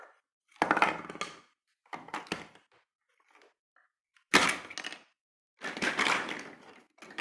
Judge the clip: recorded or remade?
recorded